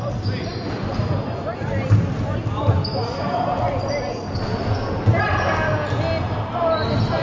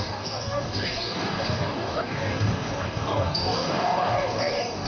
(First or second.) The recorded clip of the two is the first